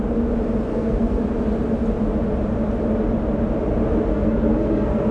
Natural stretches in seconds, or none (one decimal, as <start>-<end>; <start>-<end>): 0.0-0.7; 1.2-4.1